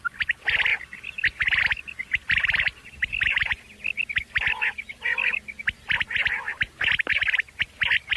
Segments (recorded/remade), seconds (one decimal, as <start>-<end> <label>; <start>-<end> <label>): 0.0-2.8 recorded; 2.8-3.6 remade; 3.6-8.2 recorded